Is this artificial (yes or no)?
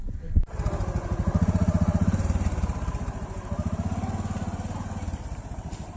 no